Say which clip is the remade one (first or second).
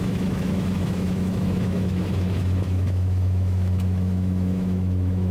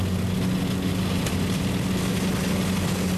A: first